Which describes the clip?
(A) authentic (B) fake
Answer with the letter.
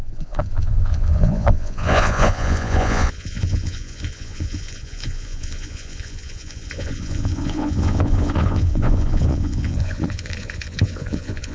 B